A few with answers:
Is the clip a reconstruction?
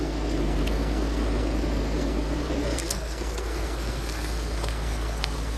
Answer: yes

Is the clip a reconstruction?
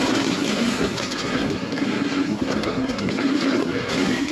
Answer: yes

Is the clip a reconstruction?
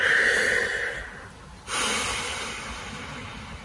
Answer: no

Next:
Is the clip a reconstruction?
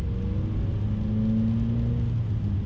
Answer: no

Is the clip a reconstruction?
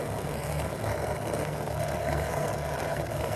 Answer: yes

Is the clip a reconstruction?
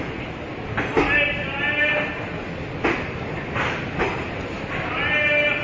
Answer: no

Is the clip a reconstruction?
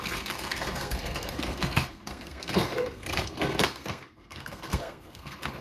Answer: yes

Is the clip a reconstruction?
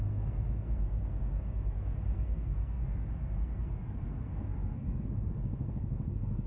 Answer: yes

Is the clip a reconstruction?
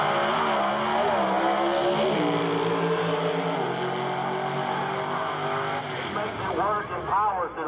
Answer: no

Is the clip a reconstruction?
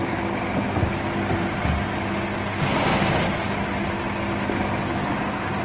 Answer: no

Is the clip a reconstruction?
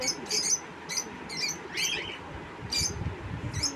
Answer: no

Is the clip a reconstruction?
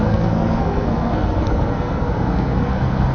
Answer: yes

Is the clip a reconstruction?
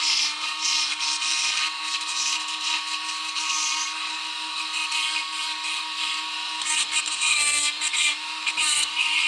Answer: yes